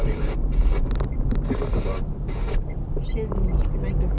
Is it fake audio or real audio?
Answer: fake